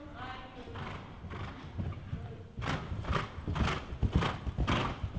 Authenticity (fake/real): real